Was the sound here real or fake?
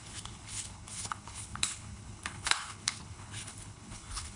fake